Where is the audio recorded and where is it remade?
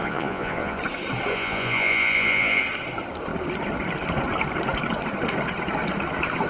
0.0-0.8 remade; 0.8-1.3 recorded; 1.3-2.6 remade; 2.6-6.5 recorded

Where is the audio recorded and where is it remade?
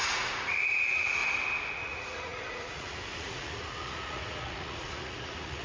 0.0-1.2 remade; 1.2-1.7 recorded; 1.7-5.6 remade